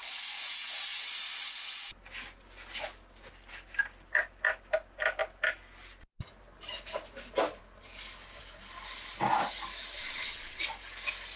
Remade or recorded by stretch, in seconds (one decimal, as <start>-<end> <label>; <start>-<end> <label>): 0.0-10.0 recorded; 10.0-10.6 remade; 10.6-11.4 recorded

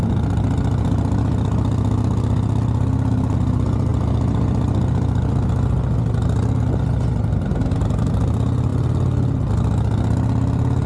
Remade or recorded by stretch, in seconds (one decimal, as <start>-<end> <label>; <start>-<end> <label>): 0.0-10.9 recorded

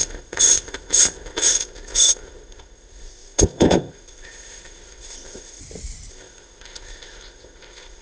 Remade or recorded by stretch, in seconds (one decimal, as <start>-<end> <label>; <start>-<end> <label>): 0.0-5.6 remade; 5.6-6.1 recorded; 6.1-8.0 remade